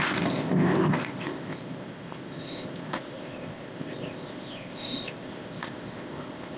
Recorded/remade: remade